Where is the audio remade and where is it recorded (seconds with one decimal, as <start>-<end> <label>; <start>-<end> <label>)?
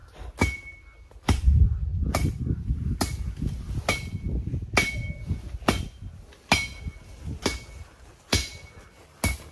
0.0-9.5 recorded